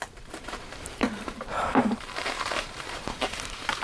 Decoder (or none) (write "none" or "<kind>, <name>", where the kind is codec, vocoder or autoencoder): vocoder, BigVGAN v2